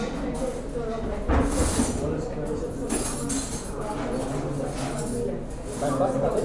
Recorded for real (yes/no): yes